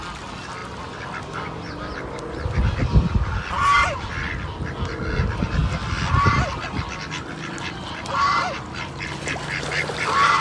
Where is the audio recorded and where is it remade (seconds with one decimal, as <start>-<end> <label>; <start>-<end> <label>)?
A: 0.0-10.4 recorded